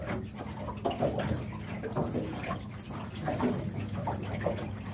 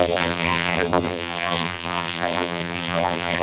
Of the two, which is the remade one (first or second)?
second